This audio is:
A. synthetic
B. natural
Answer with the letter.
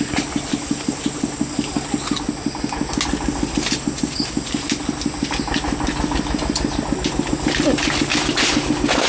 B